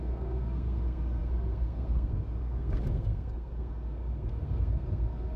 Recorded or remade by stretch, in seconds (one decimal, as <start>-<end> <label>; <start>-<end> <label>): 0.0-5.4 remade